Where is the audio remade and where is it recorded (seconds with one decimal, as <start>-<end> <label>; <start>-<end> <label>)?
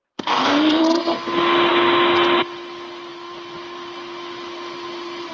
0.0-1.0 remade; 1.0-3.1 recorded; 3.1-5.3 remade